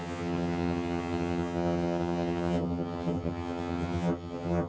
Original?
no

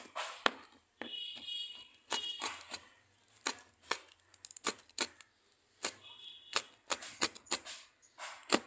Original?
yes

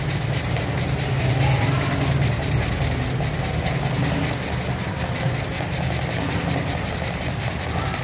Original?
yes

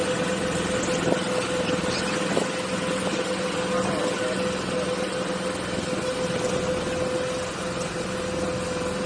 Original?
yes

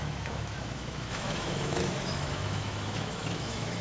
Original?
no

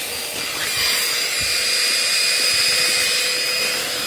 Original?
yes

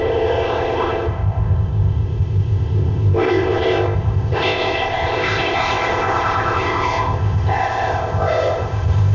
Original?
no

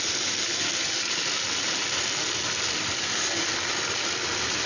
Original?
yes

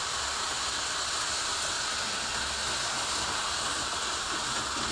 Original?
yes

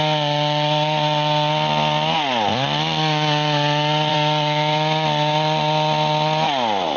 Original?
no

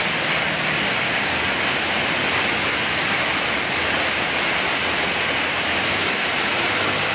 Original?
yes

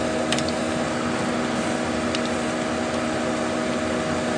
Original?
yes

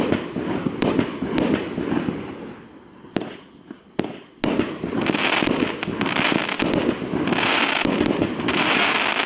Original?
yes